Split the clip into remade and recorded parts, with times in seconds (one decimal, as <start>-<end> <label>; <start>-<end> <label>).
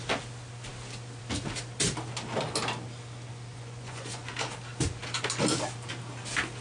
0.0-3.5 recorded; 3.5-4.3 remade; 4.3-6.6 recorded